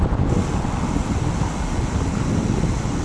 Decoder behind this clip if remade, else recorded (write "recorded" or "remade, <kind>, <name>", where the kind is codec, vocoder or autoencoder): recorded